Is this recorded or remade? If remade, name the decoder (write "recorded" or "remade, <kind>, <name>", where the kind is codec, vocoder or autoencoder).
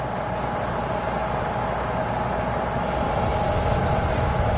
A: recorded